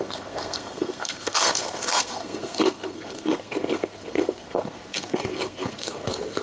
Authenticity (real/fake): fake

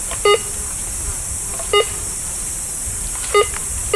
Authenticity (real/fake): real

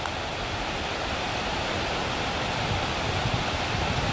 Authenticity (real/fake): real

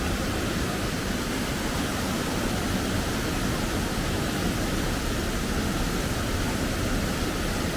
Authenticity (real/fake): real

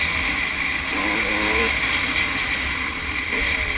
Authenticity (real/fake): real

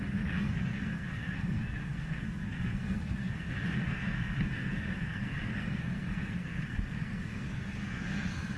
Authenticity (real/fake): fake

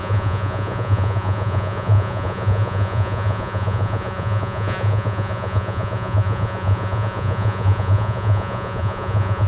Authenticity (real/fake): fake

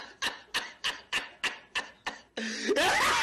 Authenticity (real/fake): real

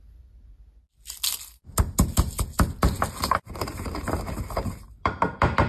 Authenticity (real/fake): real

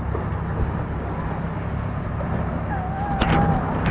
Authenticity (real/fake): real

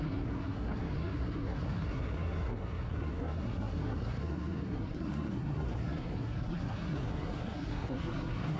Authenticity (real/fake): fake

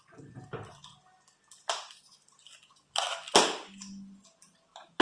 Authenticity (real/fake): real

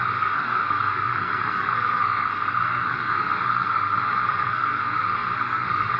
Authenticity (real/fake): fake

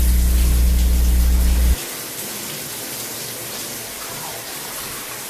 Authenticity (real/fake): fake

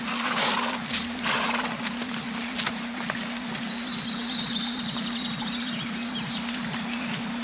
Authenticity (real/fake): real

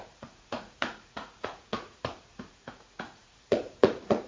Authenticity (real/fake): fake